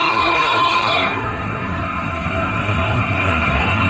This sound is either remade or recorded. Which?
remade